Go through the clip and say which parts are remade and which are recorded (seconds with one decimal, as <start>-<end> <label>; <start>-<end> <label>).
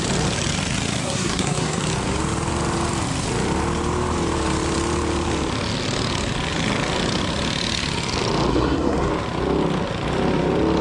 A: 0.0-1.0 recorded; 1.0-1.8 remade; 1.8-8.5 recorded; 8.5-9.1 remade; 9.1-10.8 recorded